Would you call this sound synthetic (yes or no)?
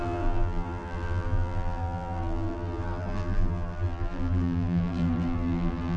yes